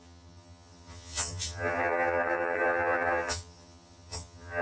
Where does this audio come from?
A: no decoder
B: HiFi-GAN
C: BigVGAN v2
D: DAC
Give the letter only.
B